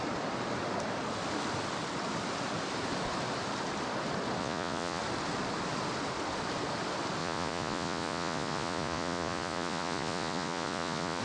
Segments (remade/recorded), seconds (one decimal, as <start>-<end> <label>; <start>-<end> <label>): 0.0-4.4 recorded; 4.4-5.0 remade; 5.0-7.2 recorded; 7.2-11.2 remade